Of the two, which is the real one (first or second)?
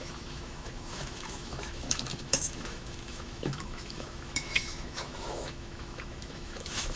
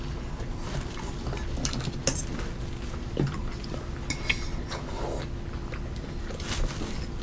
second